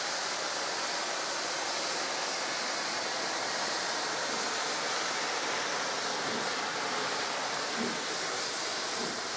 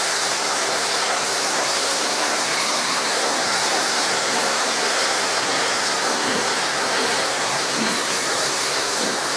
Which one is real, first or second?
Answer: first